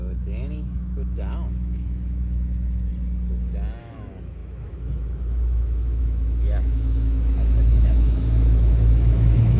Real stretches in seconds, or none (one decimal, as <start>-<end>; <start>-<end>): 2.9-3.8